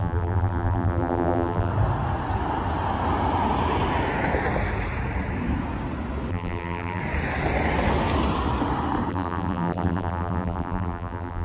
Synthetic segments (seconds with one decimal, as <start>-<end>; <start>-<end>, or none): 0.0-1.7; 6.3-7.0; 9.1-11.4